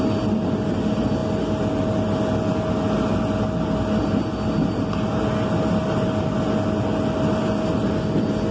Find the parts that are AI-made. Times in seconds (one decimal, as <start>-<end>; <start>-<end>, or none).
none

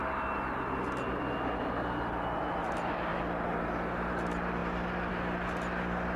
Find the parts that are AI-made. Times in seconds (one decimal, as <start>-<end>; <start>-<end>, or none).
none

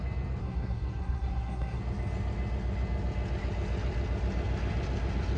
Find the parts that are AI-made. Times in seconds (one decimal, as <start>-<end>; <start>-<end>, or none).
0.4-1.8

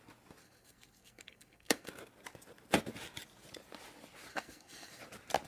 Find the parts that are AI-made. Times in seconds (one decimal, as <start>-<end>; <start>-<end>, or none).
0.4-1.9; 4.3-5.0

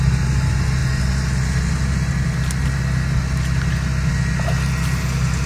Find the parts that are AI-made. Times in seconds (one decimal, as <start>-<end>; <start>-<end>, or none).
none

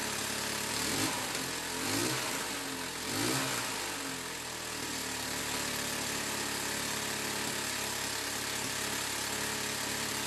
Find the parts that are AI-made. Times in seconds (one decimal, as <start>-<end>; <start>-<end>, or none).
none

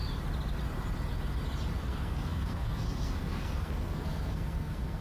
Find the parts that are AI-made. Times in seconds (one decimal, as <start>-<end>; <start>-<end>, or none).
1.8-5.0